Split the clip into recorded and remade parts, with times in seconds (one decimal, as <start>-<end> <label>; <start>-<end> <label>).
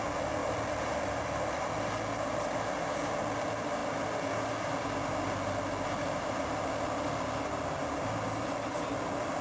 0.0-0.4 recorded; 0.4-1.7 remade; 1.7-9.4 recorded